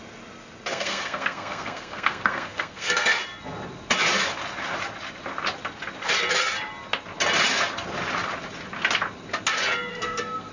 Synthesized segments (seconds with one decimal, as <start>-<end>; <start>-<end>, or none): 0.7-3.2; 9.9-10.5